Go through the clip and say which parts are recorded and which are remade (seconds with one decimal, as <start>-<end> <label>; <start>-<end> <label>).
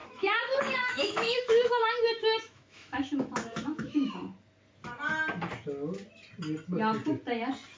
0.0-4.1 remade; 4.1-7.8 recorded